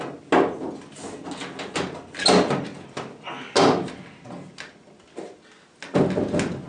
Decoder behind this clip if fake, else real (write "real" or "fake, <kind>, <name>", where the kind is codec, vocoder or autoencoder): real